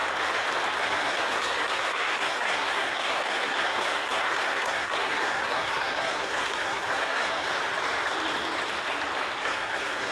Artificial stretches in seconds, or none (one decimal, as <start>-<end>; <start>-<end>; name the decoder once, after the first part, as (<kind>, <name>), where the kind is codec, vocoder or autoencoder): 0.8-7.5 (codec, SNAC); 9.4-10.1